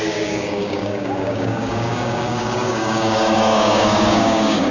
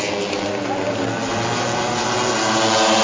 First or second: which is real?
second